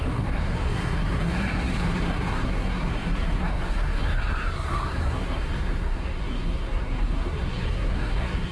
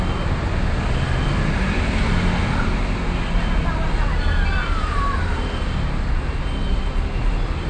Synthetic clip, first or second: first